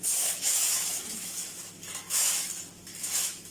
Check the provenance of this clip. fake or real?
fake